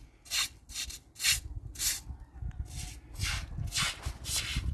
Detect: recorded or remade recorded